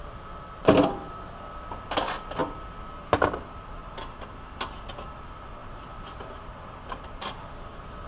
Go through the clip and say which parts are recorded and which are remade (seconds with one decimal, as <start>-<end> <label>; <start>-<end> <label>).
0.0-8.1 recorded